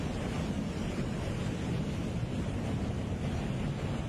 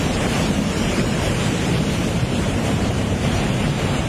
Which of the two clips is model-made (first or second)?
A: second